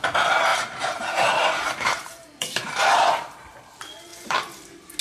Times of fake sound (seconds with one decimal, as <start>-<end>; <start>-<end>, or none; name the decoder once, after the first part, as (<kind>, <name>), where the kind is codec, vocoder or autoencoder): 0.5-3.5 (vocoder, BigVGAN v2)